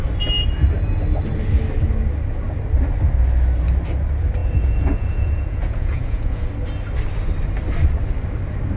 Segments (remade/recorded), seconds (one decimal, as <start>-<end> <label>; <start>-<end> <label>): 0.0-4.4 recorded; 4.4-6.5 remade; 6.5-8.8 recorded